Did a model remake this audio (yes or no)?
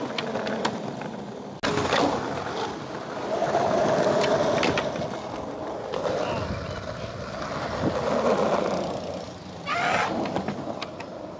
no